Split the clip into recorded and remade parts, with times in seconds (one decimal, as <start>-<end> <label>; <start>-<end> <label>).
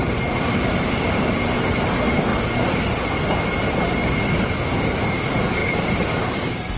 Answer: 0.0-2.3 remade; 2.3-4.9 recorded; 4.9-6.8 remade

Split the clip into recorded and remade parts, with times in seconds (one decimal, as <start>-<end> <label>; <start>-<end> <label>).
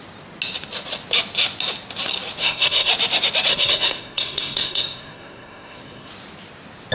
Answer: 0.0-2.4 recorded; 2.4-2.9 remade; 2.9-3.5 recorded; 3.5-6.1 remade; 6.1-6.9 recorded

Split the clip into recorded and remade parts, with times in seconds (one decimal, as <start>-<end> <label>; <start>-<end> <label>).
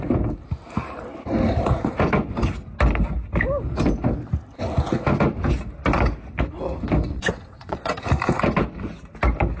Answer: 0.0-7.1 recorded; 7.1-7.9 remade; 7.9-9.6 recorded